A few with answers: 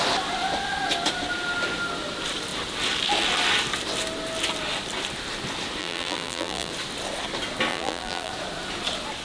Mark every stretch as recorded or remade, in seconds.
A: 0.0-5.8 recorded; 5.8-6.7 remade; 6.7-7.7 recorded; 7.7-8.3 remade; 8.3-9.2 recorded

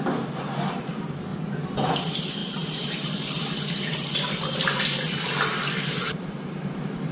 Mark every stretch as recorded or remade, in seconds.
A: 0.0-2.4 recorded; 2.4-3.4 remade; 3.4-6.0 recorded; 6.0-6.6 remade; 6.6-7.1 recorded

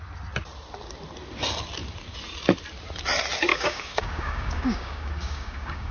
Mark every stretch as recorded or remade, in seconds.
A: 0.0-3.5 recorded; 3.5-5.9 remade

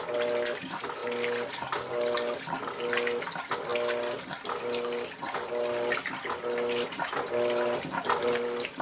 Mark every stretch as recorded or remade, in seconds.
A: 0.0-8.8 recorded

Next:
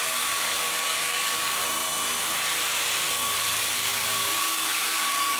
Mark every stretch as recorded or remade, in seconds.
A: 0.0-1.6 remade; 1.6-3.4 recorded; 3.4-5.4 remade